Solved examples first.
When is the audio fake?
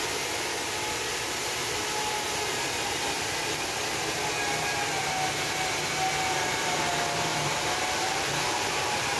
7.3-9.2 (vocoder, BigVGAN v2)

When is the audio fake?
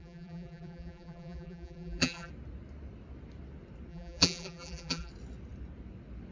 0.0-2.3 (vocoder, BigVGAN v2); 3.9-5.1